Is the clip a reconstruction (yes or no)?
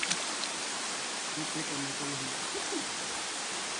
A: no